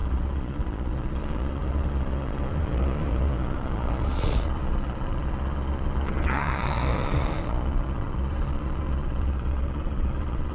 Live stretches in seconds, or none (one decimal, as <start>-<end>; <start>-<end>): none